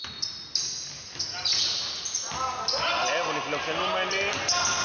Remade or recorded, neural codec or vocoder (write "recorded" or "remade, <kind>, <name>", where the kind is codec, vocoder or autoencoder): recorded